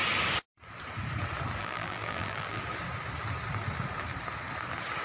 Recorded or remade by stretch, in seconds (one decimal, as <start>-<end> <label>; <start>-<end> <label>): 0.0-1.6 recorded; 1.6-2.6 remade; 2.6-5.0 recorded